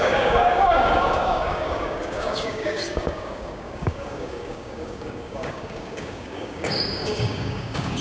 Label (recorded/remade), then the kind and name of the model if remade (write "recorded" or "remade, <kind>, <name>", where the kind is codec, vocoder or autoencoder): remade, codec, DAC